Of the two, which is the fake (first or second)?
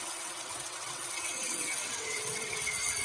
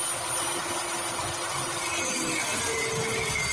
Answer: first